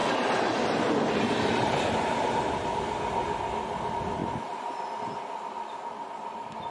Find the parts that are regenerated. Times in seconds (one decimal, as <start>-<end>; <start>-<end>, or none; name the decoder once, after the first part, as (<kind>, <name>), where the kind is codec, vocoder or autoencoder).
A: 4.2-5.0 (vocoder, BigVGAN v2)